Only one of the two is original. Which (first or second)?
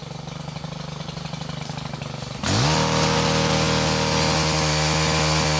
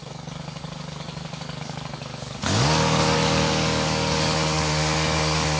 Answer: first